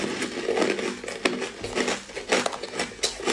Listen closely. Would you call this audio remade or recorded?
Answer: recorded